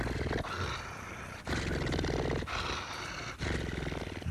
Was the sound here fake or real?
real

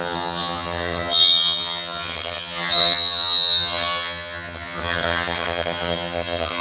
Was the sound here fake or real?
fake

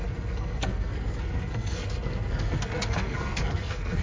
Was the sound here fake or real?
fake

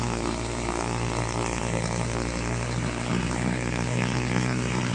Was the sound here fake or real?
fake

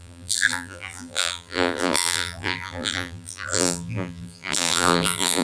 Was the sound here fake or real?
fake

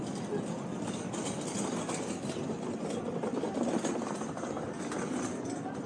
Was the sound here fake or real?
real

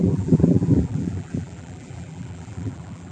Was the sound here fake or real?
fake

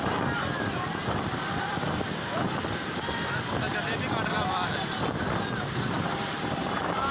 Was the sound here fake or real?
fake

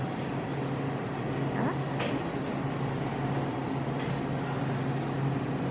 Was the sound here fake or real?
real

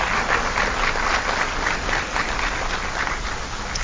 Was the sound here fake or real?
real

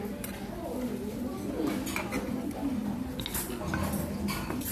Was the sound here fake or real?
real